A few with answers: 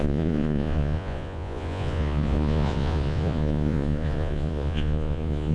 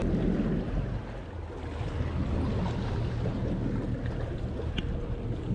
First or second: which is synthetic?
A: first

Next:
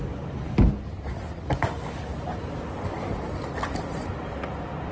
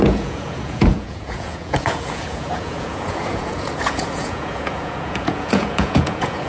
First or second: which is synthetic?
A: second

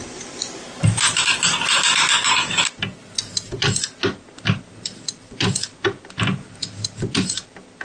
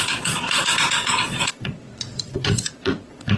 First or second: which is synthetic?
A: second